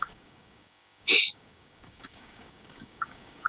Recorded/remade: remade